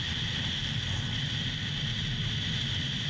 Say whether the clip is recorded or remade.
recorded